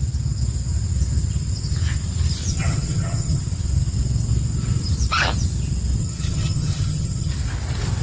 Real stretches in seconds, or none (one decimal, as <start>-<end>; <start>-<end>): 0.0-2.5; 3.4-6.0; 7.3-8.0